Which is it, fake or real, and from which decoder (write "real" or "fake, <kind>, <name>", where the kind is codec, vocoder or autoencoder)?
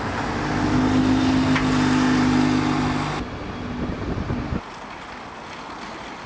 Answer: real